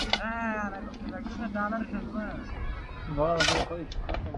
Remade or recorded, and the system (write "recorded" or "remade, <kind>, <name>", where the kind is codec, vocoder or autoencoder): recorded